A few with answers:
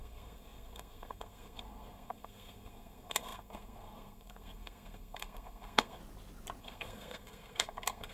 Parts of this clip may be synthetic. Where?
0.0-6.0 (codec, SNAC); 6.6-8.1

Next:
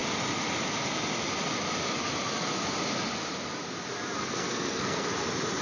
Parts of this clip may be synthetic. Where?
4.2-5.1 (codec, SNAC)

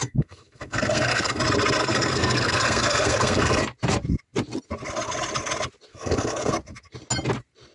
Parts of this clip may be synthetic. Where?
0.0-1.4 (codec, SNAC); 1.8-3.6; 5.9-6.5